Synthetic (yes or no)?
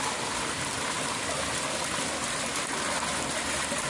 no